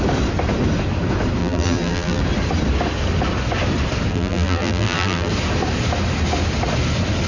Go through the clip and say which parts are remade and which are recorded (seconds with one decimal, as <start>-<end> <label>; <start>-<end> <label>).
0.0-1.4 recorded; 1.4-2.2 remade; 2.2-4.1 recorded; 4.1-5.3 remade; 5.3-7.3 recorded